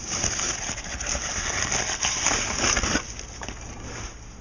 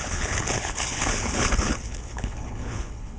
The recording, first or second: first